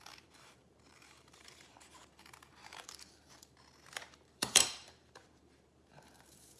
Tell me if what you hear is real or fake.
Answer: fake